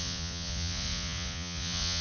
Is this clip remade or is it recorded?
remade